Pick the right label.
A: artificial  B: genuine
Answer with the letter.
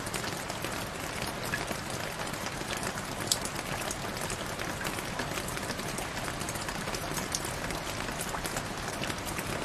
B